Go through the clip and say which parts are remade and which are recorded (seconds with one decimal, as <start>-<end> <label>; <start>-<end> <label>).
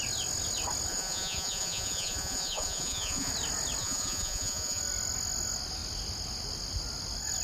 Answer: 0.0-0.9 recorded; 0.9-3.3 remade; 3.3-3.8 recorded; 3.8-4.8 remade; 4.8-7.4 recorded